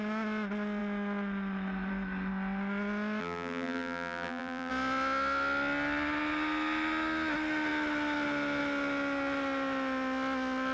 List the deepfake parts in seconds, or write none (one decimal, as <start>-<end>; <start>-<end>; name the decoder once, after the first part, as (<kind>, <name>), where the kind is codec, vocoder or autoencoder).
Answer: 3.2-4.7 (vocoder, BigVGAN v2)